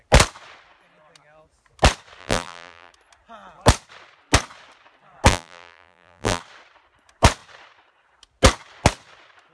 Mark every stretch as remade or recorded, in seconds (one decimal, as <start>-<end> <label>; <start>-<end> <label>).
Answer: 0.0-2.2 recorded; 2.2-2.9 remade; 2.9-5.3 recorded; 5.3-6.4 remade; 6.4-9.5 recorded

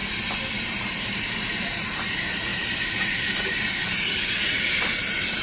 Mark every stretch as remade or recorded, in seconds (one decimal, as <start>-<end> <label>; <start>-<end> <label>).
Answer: 0.0-0.6 recorded; 0.6-5.4 remade